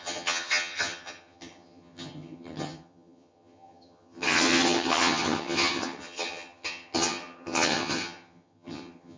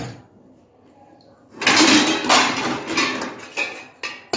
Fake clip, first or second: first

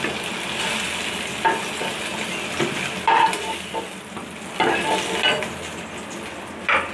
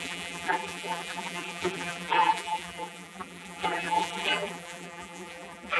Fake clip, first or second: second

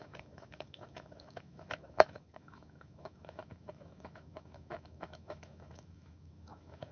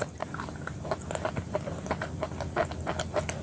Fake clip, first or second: first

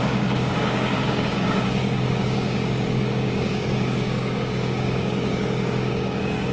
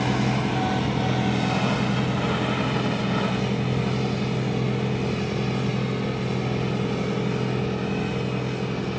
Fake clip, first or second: first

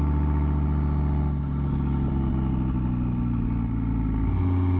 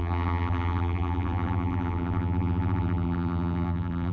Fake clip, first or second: second